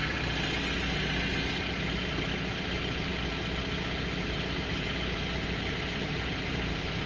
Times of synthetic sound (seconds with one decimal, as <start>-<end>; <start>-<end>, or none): 1.9-3.1; 4.2-7.1